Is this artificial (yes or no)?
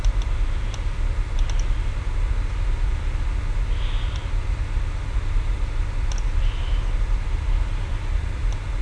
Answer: no